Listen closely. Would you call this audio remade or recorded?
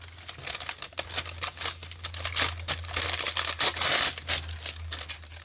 recorded